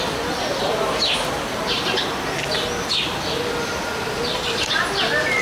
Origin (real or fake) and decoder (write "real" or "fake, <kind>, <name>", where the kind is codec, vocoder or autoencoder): real